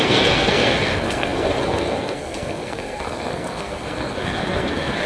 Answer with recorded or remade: remade